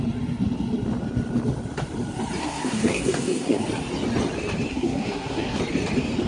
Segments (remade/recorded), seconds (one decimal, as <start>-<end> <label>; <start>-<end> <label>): 0.0-2.4 recorded; 2.4-3.6 remade; 3.6-4.7 recorded; 4.7-5.6 remade; 5.6-6.3 recorded